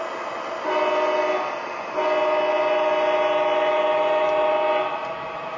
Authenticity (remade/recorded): recorded